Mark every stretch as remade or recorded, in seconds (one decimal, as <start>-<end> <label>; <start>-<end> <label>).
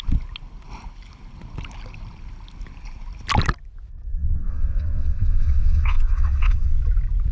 0.0-4.1 recorded; 4.1-6.8 remade; 6.8-7.3 recorded